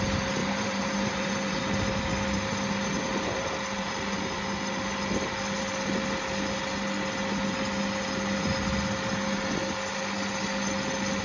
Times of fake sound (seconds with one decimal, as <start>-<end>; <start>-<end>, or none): 0.4-1.6